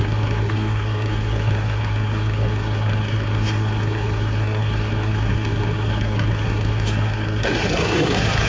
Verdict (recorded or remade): remade